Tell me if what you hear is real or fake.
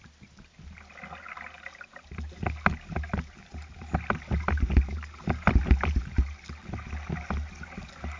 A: real